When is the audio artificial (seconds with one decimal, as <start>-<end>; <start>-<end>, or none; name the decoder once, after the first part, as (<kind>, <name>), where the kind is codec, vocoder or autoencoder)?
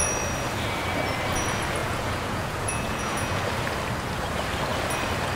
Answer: 1.8-3.4 (vocoder, Vocos)